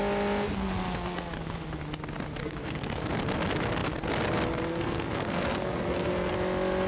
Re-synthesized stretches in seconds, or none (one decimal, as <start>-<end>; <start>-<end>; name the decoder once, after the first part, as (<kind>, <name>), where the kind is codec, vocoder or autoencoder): 2.4-3.0 (codec, SNAC); 4.7-6.3